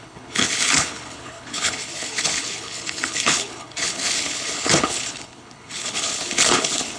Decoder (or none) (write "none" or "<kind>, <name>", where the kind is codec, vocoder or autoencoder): codec, HILCodec